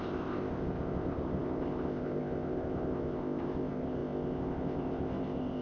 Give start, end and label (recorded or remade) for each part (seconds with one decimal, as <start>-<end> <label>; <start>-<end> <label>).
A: 0.0-5.6 remade